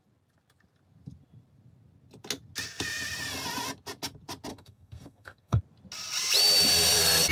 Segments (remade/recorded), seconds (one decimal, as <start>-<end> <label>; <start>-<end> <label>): 0.0-4.5 recorded; 4.5-5.6 remade; 5.6-7.3 recorded